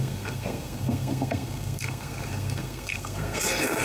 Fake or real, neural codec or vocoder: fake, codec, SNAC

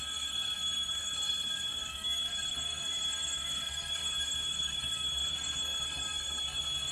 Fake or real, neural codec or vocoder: fake, codec, SNAC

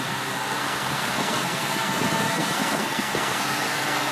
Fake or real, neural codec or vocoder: fake, codec, SNAC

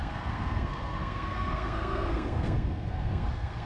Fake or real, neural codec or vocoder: fake, codec, SNAC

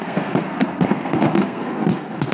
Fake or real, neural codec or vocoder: fake, codec, SNAC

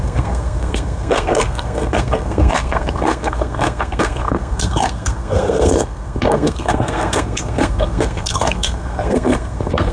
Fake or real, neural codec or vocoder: fake, codec, SNAC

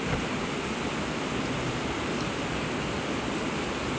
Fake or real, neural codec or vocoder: real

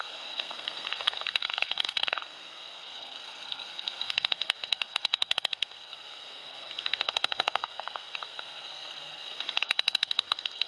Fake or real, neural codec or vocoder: fake, codec, SNAC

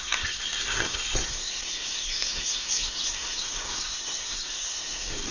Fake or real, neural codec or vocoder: fake, codec, SNAC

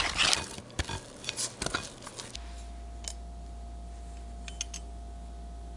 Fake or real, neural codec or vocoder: real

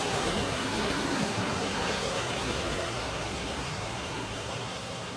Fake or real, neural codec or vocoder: fake, codec, SNAC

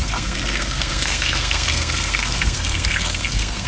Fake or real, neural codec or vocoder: fake, codec, SNAC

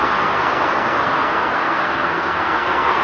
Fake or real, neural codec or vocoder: fake, codec, SNAC